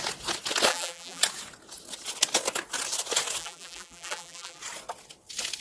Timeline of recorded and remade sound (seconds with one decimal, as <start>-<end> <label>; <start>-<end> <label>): 0.0-0.7 recorded; 0.7-1.2 remade; 1.2-3.4 recorded; 3.4-4.6 remade; 4.6-5.6 recorded